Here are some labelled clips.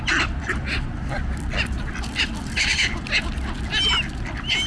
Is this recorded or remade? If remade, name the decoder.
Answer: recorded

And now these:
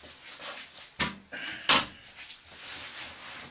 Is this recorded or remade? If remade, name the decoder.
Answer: recorded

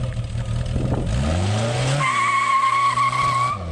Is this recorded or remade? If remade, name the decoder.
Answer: recorded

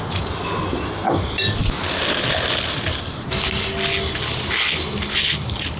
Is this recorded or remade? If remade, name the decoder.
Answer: recorded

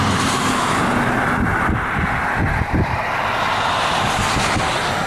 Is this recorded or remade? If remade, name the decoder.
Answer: recorded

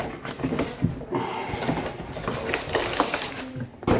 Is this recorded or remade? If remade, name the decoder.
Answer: recorded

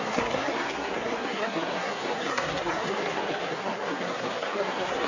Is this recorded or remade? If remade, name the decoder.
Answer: remade, codec, SNAC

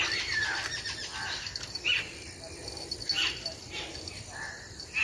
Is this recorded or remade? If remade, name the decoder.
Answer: recorded